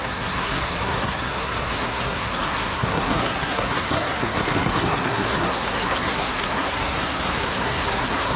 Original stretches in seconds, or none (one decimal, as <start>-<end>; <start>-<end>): none